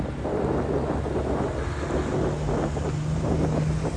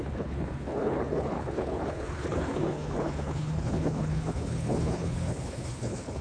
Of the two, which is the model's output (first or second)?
second